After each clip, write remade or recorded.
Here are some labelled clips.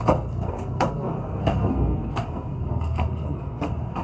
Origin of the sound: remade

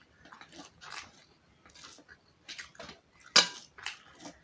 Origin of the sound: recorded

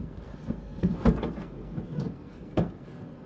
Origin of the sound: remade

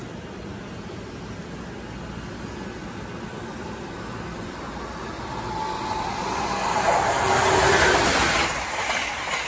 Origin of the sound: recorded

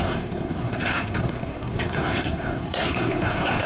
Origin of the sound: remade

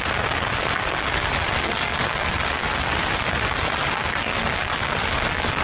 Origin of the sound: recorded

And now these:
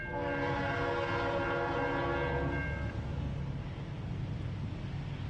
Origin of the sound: recorded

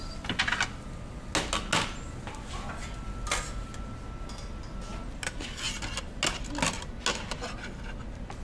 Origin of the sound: recorded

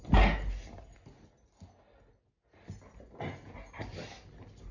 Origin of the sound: recorded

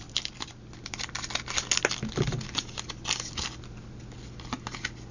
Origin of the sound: recorded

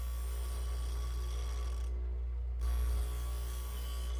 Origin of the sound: recorded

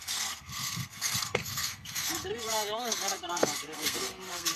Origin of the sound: remade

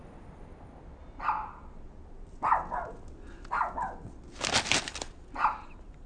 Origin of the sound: recorded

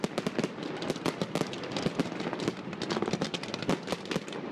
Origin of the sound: recorded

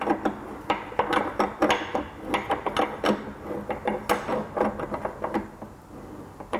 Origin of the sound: recorded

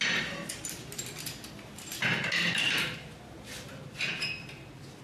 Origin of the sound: recorded